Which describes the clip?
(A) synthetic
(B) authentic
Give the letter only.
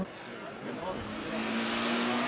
B